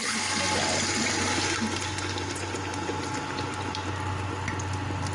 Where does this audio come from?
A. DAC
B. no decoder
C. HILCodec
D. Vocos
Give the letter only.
B